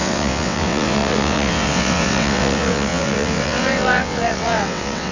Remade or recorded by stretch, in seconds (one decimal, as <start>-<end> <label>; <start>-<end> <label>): 0.0-5.1 remade